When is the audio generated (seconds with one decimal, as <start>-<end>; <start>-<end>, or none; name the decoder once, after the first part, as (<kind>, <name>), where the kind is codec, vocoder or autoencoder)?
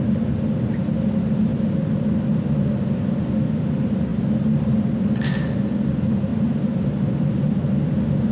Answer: none